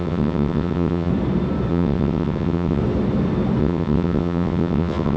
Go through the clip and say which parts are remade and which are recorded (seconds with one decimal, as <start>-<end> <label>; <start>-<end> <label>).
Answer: 0.0-1.1 remade; 1.1-1.7 recorded; 1.7-2.8 remade; 2.8-3.6 recorded; 3.6-5.2 remade

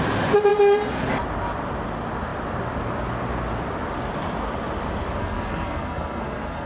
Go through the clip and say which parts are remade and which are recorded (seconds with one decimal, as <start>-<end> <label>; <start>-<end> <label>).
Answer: 0.0-5.2 recorded; 5.2-6.7 remade

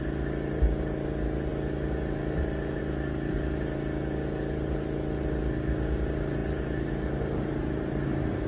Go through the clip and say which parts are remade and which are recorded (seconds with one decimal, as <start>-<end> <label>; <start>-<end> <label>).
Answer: 0.0-8.5 recorded

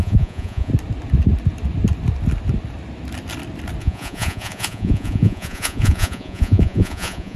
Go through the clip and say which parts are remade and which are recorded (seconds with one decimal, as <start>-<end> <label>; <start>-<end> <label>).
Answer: 0.0-0.7 remade; 0.7-3.8 recorded; 3.8-7.4 remade